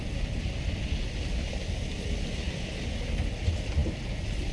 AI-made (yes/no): no